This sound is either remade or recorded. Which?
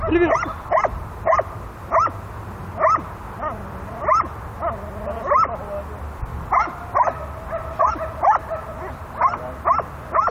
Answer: recorded